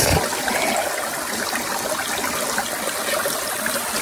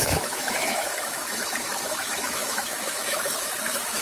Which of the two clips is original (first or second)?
first